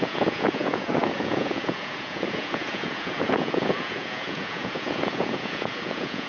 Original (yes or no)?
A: no